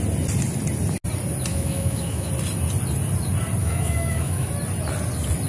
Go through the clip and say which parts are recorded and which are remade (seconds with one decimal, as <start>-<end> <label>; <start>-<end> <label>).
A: 0.0-1.5 recorded; 1.5-2.3 remade; 2.3-3.6 recorded; 3.6-4.5 remade; 4.5-5.5 recorded